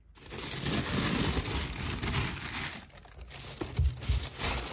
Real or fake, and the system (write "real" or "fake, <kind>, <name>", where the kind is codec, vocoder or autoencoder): real